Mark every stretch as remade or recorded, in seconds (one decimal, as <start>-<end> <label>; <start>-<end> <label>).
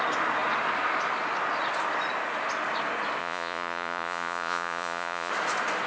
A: 0.0-3.2 recorded; 3.2-5.3 remade; 5.3-5.9 recorded